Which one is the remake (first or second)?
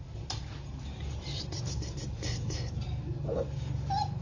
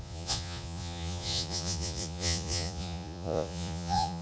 second